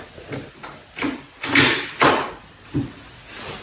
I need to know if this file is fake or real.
real